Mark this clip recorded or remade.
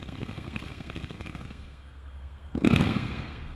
remade